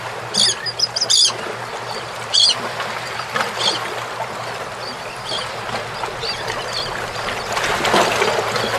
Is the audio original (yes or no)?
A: yes